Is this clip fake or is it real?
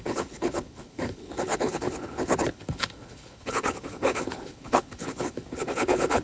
fake